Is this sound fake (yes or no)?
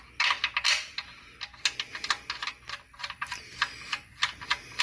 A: no